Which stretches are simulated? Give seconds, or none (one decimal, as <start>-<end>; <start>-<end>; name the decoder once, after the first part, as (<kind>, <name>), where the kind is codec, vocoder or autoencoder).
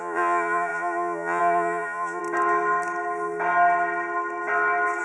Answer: 0.0-2.2 (vocoder, Vocos)